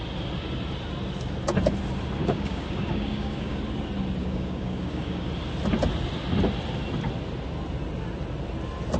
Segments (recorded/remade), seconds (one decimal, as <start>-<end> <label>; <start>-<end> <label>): 0.0-2.2 recorded; 2.2-3.6 remade; 3.6-4.2 recorded; 4.2-5.3 remade; 5.3-9.0 recorded